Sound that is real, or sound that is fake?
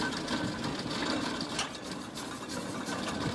real